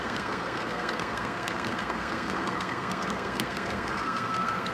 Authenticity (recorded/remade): remade